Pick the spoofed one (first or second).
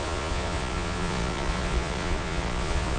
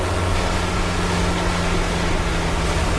first